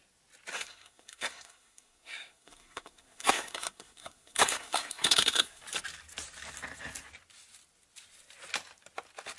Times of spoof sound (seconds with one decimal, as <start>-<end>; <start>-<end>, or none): 0.5-5.6